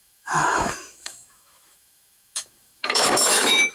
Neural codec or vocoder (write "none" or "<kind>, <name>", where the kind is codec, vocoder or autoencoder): autoencoder, DAC-VAE